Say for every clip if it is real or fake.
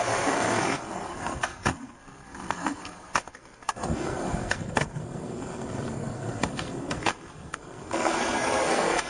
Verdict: fake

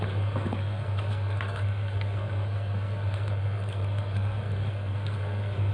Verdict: fake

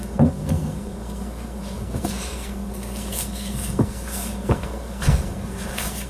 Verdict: fake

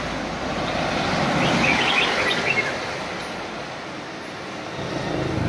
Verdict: real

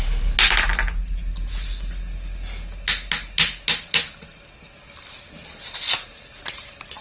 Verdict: real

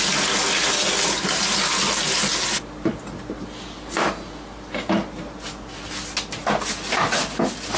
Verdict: real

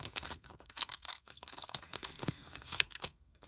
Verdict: fake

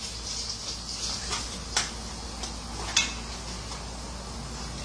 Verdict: real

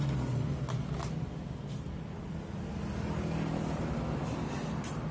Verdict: real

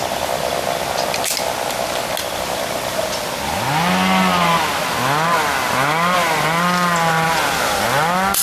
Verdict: real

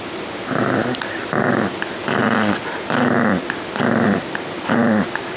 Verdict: real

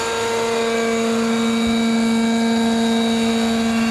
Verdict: real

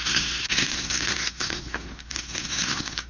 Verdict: fake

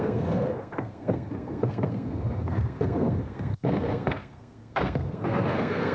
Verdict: fake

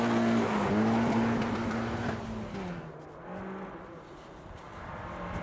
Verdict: real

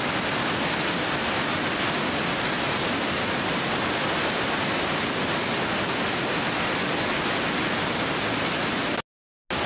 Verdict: real